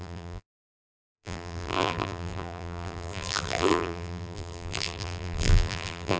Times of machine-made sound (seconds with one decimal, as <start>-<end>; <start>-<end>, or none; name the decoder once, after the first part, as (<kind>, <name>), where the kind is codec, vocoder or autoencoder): 0.0-6.2 (vocoder, BigVGAN v2)

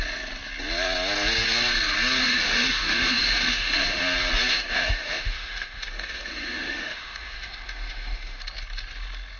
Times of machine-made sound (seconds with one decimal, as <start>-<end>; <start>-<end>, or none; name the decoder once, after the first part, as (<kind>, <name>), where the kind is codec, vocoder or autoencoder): 2.2-4.0 (autoencoder, DAC-VAE); 4.5-8.4

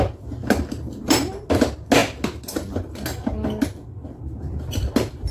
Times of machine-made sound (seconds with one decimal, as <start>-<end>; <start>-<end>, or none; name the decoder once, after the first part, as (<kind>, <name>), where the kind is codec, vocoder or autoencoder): none